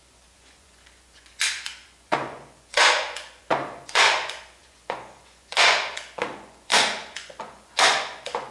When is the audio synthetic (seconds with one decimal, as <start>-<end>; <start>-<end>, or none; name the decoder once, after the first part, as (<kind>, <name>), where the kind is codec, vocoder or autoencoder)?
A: 0.0-8.5 (vocoder, Vocos)